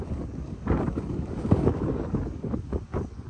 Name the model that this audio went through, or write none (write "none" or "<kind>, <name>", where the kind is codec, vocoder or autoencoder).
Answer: codec, DAC